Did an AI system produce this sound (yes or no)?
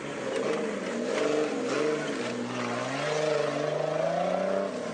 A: no